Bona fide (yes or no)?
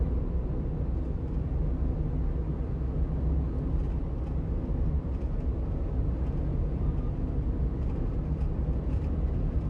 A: yes